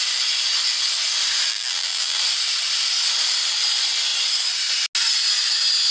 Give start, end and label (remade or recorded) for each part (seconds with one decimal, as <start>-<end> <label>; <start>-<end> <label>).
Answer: 0.0-1.5 recorded; 1.5-2.2 remade; 2.2-5.9 recorded